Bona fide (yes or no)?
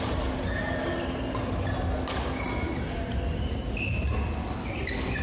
yes